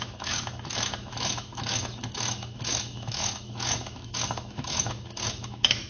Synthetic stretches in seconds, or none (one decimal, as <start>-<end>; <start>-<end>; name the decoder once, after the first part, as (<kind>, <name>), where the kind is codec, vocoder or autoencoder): 0.0-5.9 (autoencoder, DAC-VAE)